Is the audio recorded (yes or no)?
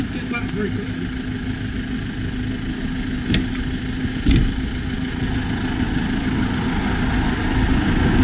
yes